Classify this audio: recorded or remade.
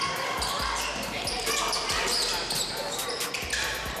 remade